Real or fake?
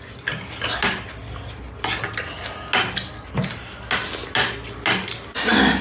real